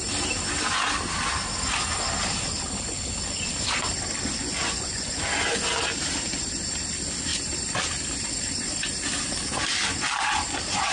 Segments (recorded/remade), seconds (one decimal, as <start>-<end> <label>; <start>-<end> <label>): 0.0-4.4 recorded; 4.4-5.2 remade; 5.2-10.9 recorded